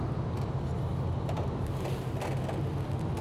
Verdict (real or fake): real